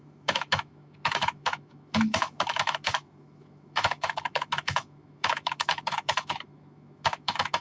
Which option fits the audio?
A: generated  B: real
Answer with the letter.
A